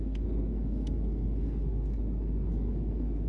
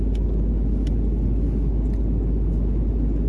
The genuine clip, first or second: second